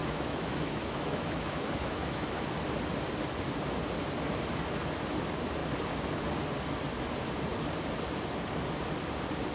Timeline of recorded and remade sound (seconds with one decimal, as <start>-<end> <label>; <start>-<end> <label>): 0.0-2.3 remade; 2.3-9.5 recorded